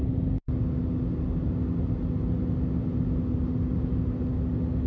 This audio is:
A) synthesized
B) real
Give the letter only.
B